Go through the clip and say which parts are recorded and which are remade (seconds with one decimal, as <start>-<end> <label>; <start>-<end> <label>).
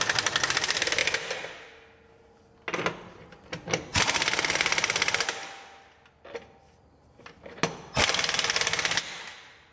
0.0-9.7 recorded